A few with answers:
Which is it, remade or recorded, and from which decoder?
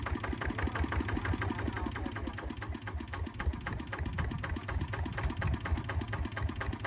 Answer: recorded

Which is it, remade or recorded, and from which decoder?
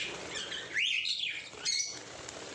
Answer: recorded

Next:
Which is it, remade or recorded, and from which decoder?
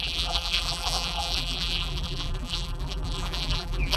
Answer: remade, vocoder, BigVGAN v2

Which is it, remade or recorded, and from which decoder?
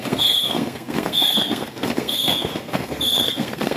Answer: remade, codec, SNAC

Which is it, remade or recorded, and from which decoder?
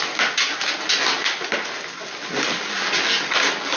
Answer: recorded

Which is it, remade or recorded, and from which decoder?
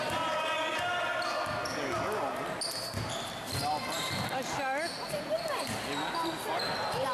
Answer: recorded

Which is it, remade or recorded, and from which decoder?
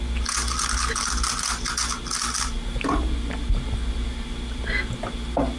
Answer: recorded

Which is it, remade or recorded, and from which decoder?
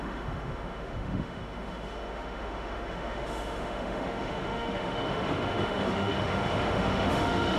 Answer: remade, autoencoder, DAC-VAE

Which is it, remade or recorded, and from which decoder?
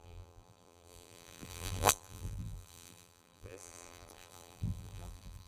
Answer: remade, vocoder, BigVGAN v2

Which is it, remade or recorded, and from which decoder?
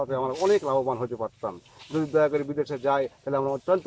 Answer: recorded